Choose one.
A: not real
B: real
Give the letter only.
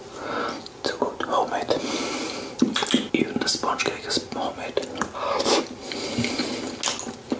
B